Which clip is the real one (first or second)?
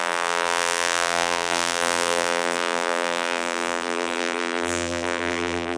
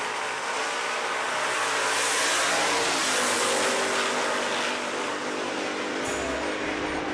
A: second